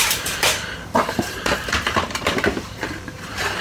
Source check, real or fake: fake